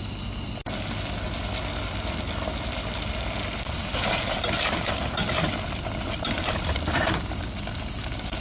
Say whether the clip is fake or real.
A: real